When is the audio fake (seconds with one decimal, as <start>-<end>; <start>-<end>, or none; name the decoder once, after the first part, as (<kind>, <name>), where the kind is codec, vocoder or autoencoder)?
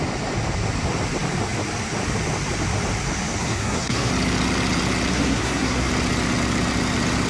3.4-4.1 (codec, SNAC); 5.1-5.9